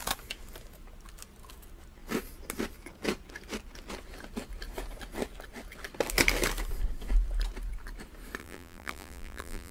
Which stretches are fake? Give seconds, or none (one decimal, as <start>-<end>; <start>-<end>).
8.4-9.7